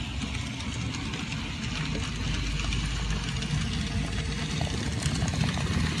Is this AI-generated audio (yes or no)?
no